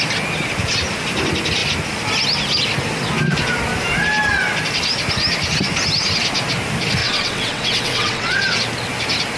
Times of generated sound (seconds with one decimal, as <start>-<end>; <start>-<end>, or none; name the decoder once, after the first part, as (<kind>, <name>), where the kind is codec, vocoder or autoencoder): 7.0-8.6 (vocoder, WaveNeXt)

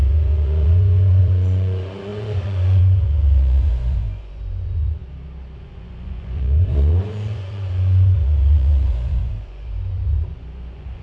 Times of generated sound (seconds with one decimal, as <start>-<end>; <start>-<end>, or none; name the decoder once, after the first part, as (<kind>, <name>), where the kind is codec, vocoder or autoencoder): 0.0-5.0 (vocoder, Vocos); 5.6-11.0

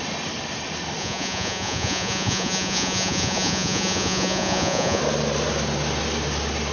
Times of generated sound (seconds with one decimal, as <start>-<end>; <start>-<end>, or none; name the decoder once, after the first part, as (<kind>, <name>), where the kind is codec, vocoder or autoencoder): 1.0-5.0 (vocoder, Vocos)

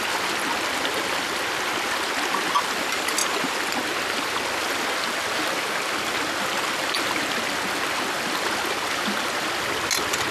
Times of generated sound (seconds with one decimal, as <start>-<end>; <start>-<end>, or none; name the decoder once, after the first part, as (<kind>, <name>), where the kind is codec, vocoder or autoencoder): none

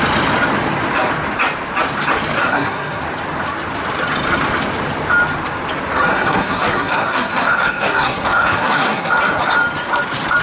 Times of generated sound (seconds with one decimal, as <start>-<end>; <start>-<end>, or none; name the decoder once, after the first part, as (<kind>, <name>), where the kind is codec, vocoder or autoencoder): 2.4-3.0 (codec, SNAC); 6.1-9.1

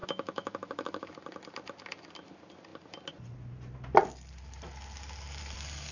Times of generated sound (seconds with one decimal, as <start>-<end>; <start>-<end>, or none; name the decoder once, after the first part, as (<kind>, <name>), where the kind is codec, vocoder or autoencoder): 0.0-1.1 (autoencoder, DAC-VAE)

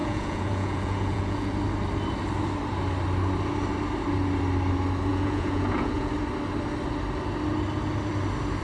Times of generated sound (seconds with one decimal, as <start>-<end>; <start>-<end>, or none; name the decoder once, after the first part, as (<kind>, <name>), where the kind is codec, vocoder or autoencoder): 0.0-1.5 (vocoder, Vocos); 5.1-6.1